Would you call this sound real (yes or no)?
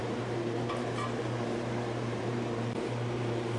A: no